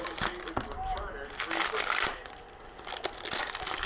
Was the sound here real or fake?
real